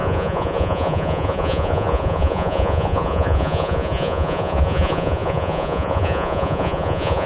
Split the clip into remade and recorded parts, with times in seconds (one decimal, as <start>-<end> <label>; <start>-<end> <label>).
0.0-7.3 remade